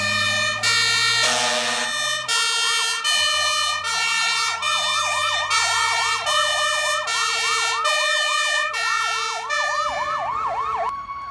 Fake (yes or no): no